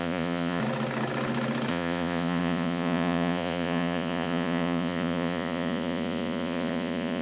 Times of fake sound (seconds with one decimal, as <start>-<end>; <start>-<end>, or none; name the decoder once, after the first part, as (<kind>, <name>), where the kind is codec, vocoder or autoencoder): 0.0-0.6 (vocoder, Vocos); 1.7-7.2